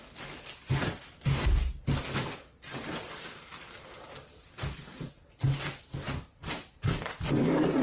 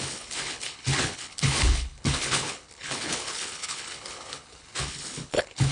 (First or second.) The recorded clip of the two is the first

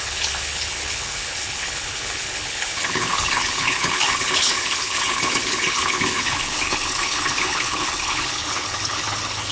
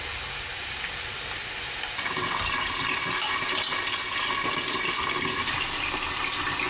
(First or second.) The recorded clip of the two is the second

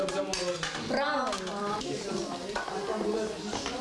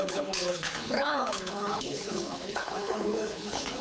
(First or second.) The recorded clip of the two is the first